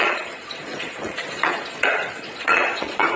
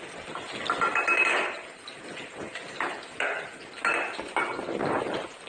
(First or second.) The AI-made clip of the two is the first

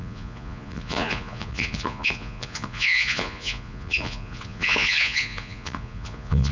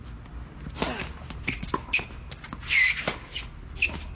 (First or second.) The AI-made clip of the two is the first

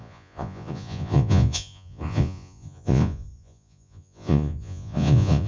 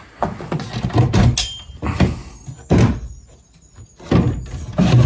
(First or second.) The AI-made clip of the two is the first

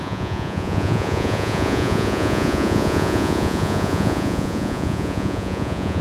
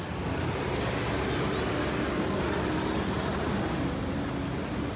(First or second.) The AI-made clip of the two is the first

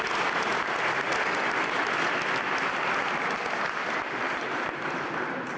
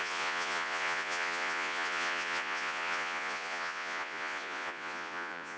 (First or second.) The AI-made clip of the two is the second